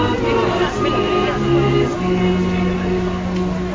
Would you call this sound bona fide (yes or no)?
yes